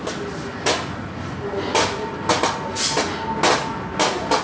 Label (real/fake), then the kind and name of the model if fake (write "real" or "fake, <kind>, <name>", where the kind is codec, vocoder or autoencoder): real